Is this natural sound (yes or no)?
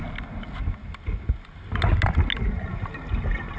yes